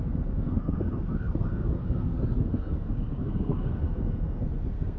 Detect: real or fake fake